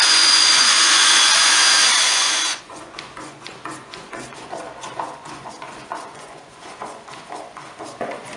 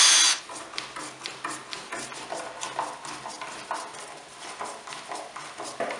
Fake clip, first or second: first